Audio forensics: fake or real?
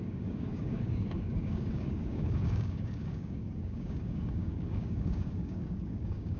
fake